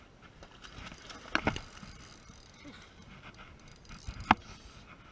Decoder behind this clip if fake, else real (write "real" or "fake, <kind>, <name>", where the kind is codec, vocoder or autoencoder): real